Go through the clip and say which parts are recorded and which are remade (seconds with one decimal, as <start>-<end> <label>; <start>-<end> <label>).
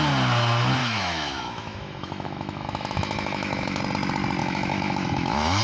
0.0-0.8 recorded; 0.8-3.8 remade; 3.8-4.4 recorded; 4.4-5.6 remade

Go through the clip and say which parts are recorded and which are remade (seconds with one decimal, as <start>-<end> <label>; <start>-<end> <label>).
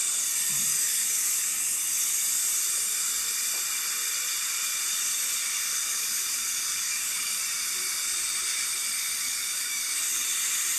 0.0-0.7 recorded; 0.7-1.9 remade; 1.9-5.7 recorded; 5.7-7.4 remade; 7.4-9.2 recorded; 9.2-9.8 remade; 9.8-10.8 recorded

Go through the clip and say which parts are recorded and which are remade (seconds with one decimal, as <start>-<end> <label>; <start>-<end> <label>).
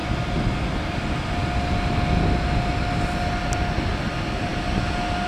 0.0-5.3 recorded